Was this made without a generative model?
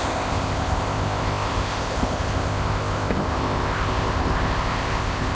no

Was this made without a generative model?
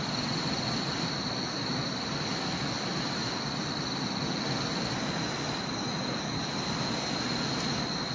yes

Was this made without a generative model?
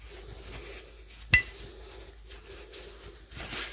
yes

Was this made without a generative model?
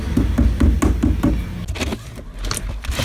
yes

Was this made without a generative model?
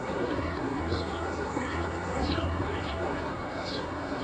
no